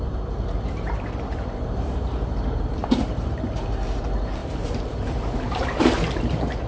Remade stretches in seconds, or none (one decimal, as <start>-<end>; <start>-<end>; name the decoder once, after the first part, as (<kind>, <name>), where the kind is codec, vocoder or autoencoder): 0.0-6.7 (vocoder, BigVGAN v2)